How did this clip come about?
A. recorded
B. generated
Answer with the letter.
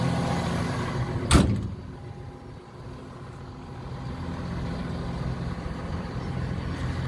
A